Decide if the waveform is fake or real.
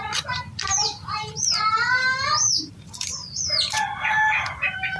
fake